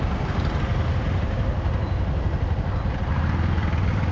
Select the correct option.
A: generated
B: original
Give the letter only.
B